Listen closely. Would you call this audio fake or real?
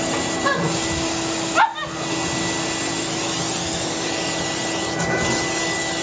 real